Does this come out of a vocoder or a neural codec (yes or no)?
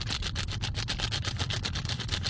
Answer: no